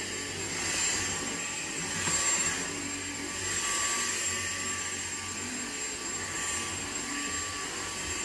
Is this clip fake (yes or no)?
no